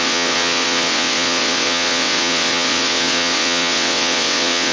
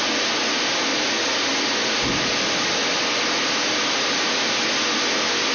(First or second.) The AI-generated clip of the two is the first